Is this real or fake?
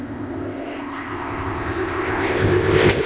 fake